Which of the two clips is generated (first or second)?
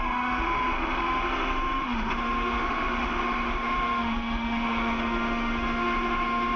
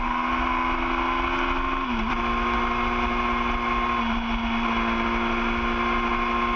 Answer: first